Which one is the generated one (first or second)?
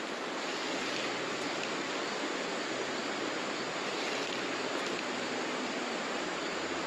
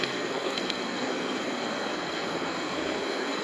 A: second